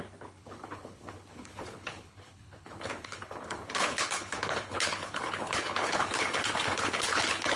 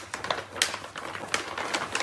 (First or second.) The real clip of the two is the second